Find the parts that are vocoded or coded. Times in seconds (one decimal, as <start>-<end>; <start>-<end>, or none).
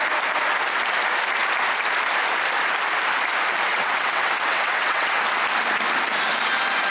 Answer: 3.7-5.2